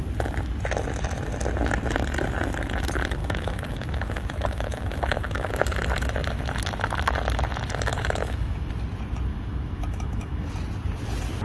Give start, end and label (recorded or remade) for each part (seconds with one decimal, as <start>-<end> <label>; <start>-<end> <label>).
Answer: 0.0-3.2 recorded; 3.2-5.5 remade; 5.5-7.9 recorded; 7.9-8.7 remade; 8.7-9.3 recorded; 9.3-10.5 remade; 10.5-11.4 recorded